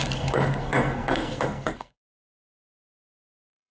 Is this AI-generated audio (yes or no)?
yes